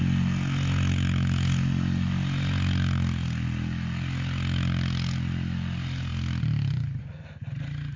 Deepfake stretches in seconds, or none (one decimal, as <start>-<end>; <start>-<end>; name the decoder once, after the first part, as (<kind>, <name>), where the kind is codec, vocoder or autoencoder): none